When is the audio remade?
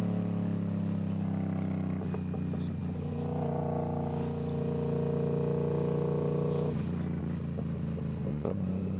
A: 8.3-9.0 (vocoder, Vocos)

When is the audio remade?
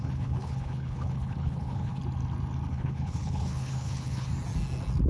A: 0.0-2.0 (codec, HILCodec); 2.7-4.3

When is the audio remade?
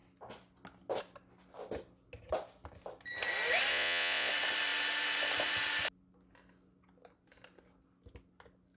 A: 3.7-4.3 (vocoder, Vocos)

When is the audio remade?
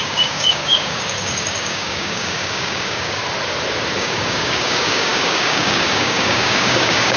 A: 0.0-3.2 (codec, DAC); 4.0-7.2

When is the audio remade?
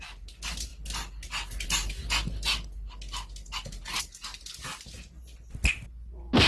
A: none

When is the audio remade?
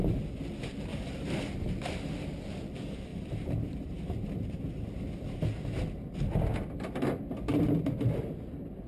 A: 0.9-2.5 (vocoder, BigVGAN v2); 3.1-5.0